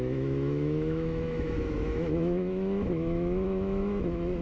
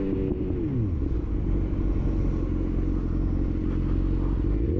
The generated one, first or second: first